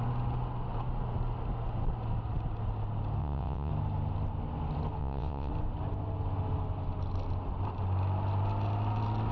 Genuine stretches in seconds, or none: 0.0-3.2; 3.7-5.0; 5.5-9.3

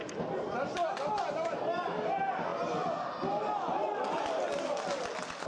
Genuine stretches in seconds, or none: 0.0-5.5

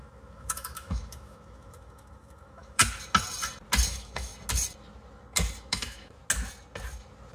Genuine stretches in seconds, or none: 2.8-3.9; 4.3-5.6; 6.2-7.3

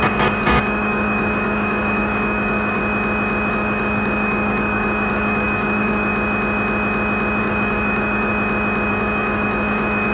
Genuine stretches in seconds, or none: 2.8-3.5; 6.1-7.4; 8.3-8.9

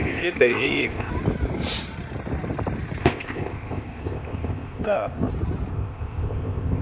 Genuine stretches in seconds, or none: 1.1-3.0; 5.3-5.7

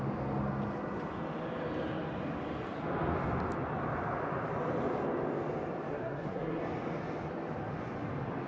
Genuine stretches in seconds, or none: 0.0-5.9; 6.6-8.5